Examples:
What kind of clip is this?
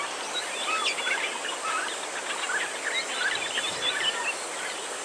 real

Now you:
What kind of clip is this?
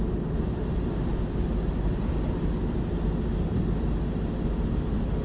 real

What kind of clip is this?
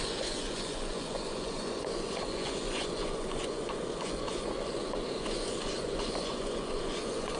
fake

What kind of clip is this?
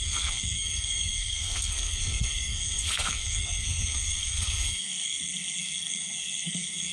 fake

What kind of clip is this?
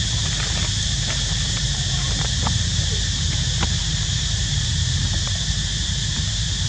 fake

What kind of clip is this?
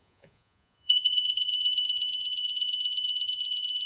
fake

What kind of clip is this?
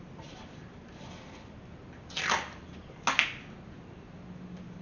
real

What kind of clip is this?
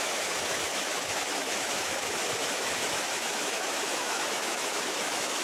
fake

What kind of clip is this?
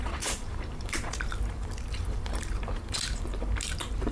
fake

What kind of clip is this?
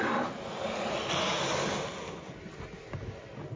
real